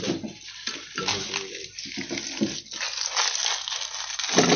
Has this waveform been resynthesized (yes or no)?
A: no